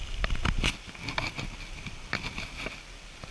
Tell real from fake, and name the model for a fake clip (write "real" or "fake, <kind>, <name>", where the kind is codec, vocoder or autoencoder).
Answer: real